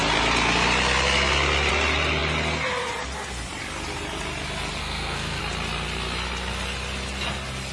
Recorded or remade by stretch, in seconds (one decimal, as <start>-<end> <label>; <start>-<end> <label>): 0.0-4.8 recorded; 4.8-5.4 remade; 5.4-7.7 recorded